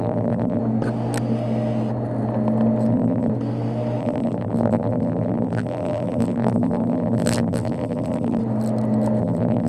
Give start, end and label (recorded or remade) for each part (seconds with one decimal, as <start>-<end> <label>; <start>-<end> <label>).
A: 0.0-0.6 remade; 0.6-2.9 recorded; 2.9-3.3 remade; 3.3-4.0 recorded; 4.0-8.4 remade; 8.4-9.2 recorded; 9.2-9.7 remade